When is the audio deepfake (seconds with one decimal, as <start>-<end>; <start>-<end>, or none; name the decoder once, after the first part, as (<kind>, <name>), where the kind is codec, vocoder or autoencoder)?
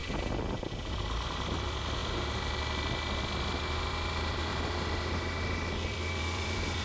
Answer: 0.0-2.0 (vocoder, BigVGAN v2); 3.2-6.8